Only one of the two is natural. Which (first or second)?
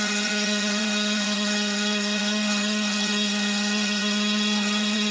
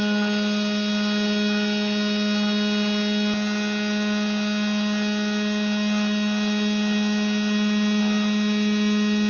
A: second